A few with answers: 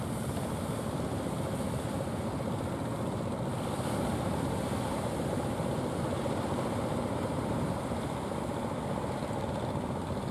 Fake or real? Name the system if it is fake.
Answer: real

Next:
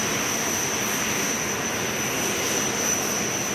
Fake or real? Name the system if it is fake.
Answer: real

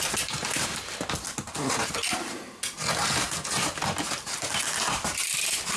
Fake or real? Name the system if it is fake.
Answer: real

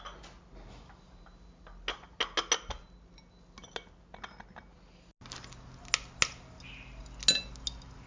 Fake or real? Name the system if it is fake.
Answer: real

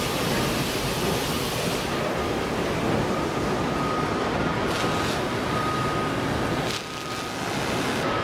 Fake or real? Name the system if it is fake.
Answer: real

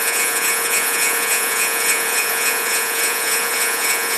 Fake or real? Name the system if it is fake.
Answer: fake, vocoder, Vocos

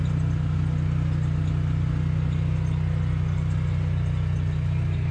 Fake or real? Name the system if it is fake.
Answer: real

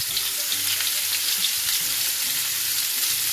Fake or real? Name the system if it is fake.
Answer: real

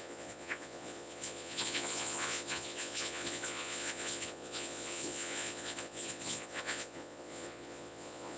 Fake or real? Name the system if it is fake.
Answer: fake, vocoder, Vocos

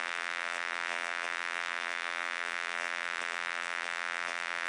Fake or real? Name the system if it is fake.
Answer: fake, vocoder, BigVGAN v2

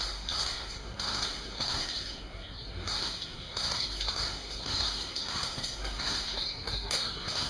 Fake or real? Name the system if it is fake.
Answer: fake, codec, SNAC